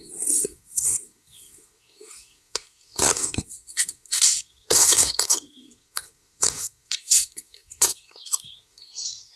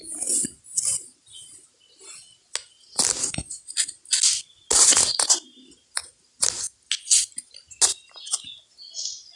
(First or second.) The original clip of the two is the second